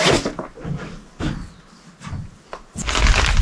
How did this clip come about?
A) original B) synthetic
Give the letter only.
A